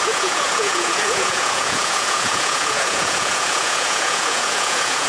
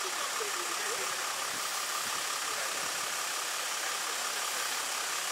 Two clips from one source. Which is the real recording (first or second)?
second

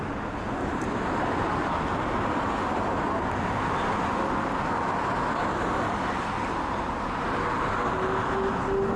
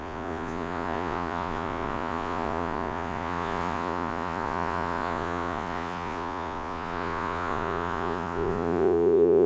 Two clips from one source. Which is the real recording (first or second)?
first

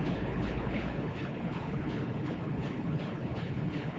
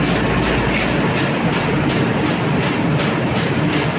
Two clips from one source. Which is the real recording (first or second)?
second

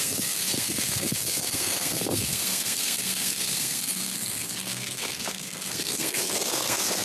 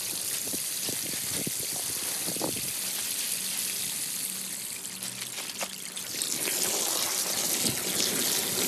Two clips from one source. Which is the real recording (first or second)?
second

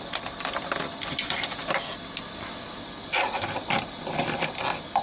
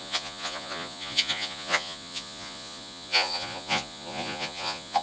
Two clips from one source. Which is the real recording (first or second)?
first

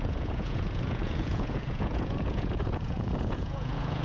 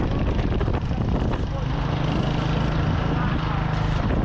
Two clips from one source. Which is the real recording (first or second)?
second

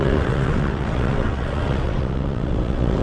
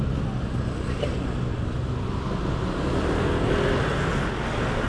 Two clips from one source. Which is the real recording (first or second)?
second